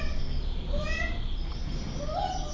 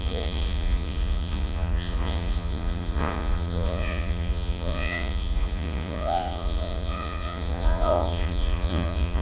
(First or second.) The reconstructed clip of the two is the second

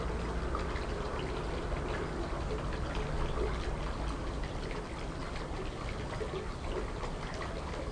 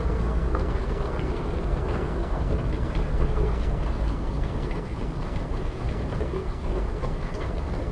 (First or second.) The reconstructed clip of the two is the second